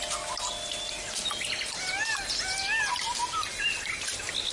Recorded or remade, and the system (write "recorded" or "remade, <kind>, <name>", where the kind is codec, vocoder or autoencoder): recorded